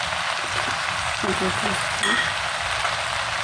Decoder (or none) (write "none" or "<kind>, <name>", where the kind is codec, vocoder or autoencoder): none